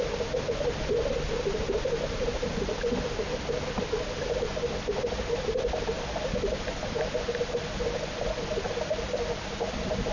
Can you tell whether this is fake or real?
real